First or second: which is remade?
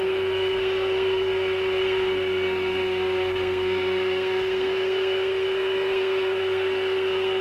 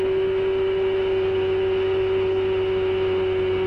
first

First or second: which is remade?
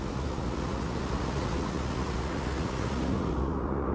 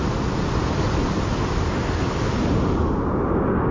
first